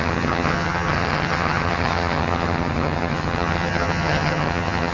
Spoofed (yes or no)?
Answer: yes